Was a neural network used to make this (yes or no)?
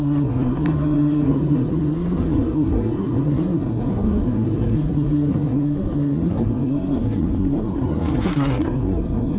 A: yes